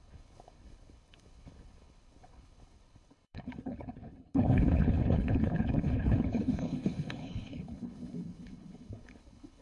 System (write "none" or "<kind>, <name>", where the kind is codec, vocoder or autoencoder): codec, HILCodec